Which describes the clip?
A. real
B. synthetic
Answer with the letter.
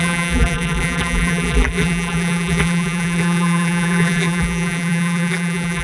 B